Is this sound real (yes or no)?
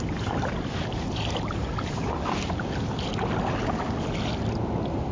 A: yes